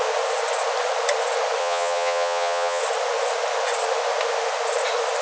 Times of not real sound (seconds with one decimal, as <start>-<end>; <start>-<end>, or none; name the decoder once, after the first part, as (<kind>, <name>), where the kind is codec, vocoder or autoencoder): 1.6-2.8 (vocoder, HiFi-GAN)